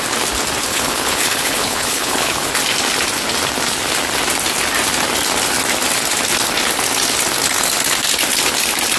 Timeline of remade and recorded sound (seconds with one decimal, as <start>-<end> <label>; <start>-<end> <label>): 0.0-0.7 recorded; 0.7-2.5 remade; 2.5-9.0 recorded